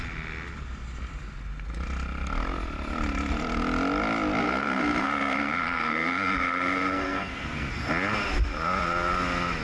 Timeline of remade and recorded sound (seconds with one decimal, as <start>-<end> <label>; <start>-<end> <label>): 0.0-4.4 recorded; 4.4-7.9 remade; 7.9-9.6 recorded